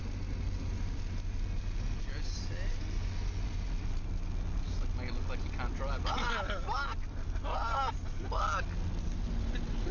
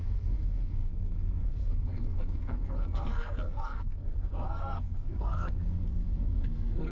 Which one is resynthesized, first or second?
second